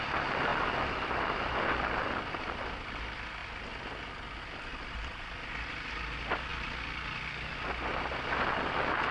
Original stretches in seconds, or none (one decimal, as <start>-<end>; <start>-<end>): 0.0-0.5; 3.0-9.1